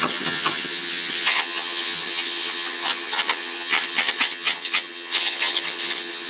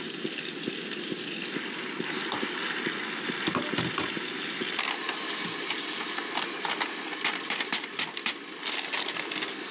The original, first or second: second